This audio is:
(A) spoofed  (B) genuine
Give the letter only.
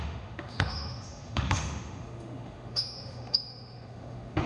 A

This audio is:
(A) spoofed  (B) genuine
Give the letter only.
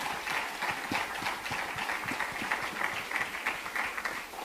B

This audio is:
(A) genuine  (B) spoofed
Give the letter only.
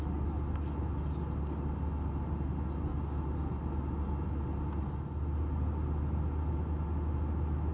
A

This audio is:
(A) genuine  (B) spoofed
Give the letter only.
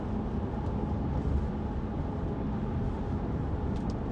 A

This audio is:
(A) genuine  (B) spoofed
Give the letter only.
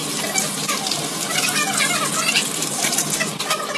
A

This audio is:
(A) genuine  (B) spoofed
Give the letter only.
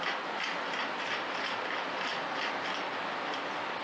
A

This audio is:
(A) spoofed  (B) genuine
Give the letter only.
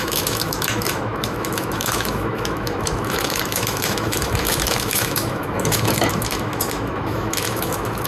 A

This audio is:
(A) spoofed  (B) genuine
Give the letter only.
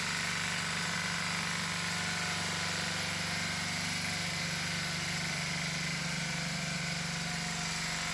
B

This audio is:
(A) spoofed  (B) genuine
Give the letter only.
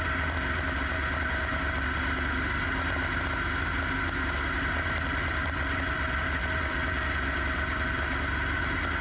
B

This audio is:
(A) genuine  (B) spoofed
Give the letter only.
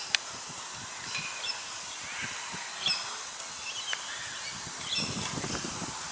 A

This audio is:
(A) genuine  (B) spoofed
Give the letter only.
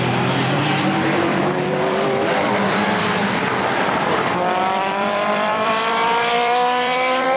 B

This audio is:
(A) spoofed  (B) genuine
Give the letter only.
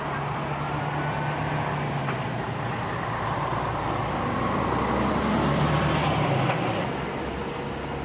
B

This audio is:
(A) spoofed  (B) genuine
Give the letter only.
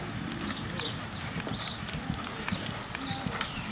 B